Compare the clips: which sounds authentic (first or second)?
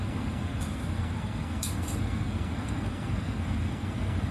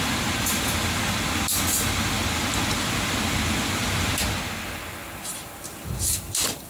second